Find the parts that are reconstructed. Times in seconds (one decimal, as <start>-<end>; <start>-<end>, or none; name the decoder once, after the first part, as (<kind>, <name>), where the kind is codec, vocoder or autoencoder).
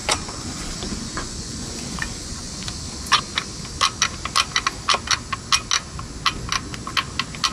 0.0-3.2 (vocoder, Vocos)